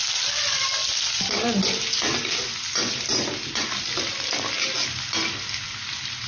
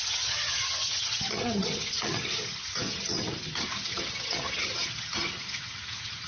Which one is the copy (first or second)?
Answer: second